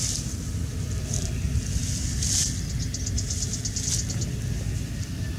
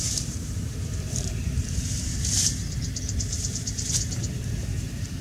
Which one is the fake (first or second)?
second